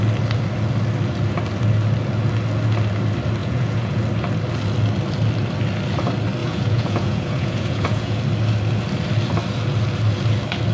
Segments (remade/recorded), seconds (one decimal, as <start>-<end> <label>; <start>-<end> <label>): 0.0-3.4 recorded; 3.4-4.0 remade; 4.0-6.4 recorded; 6.4-8.2 remade; 8.2-10.7 recorded